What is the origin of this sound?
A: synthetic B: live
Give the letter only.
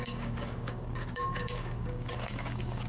A